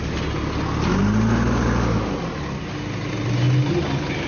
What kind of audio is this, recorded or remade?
recorded